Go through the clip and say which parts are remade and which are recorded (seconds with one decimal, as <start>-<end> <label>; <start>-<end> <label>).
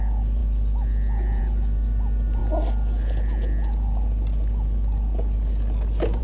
0.0-6.2 recorded